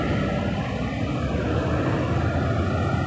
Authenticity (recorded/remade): recorded